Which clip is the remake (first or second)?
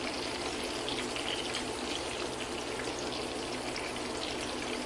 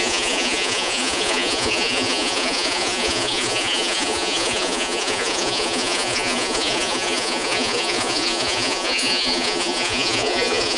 second